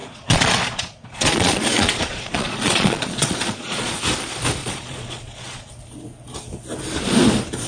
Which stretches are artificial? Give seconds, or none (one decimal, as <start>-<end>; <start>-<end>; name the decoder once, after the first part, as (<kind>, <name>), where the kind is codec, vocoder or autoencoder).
0.0-4.0 (vocoder, Vocos); 4.6-5.7

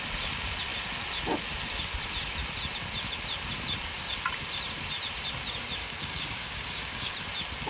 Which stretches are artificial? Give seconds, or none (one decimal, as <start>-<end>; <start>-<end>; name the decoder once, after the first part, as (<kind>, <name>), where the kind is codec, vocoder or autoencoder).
5.8-7.1 (codec, DAC)

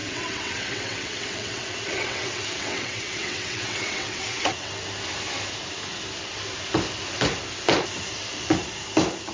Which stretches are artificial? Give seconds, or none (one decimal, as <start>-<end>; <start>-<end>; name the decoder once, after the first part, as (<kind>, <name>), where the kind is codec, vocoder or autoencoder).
0.0-4.7 (vocoder, WaveNeXt)